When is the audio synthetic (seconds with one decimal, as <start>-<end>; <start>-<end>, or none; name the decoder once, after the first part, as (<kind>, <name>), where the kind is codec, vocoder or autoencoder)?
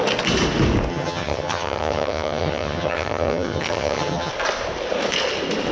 0.9-4.3 (vocoder, HiFi-GAN)